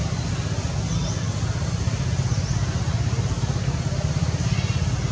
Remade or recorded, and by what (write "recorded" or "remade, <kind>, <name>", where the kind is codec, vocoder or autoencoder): recorded